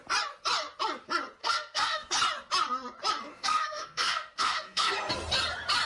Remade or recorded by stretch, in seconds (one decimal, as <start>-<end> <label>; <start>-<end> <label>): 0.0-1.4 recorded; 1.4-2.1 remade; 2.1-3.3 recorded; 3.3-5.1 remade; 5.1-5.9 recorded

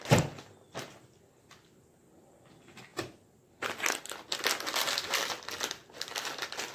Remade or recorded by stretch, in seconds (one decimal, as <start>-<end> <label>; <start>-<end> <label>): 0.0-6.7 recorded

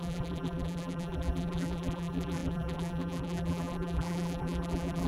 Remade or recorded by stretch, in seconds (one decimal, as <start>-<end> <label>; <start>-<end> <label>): 0.0-5.1 remade

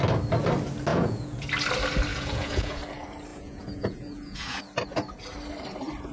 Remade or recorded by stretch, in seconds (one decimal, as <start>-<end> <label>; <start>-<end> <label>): 0.0-0.9 recorded; 0.9-1.5 remade; 1.5-2.1 recorded; 2.1-2.8 remade; 2.8-3.3 recorded; 3.3-4.6 remade; 4.6-6.1 recorded

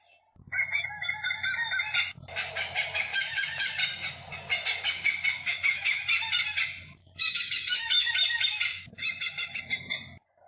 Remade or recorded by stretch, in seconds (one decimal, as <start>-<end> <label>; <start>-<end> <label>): 0.0-3.1 recorded; 3.1-3.7 remade; 3.7-5.4 recorded; 5.4-6.1 remade; 6.1-7.0 recorded; 7.0-8.1 remade; 8.1-8.7 recorded; 8.7-9.6 remade; 9.6-10.5 recorded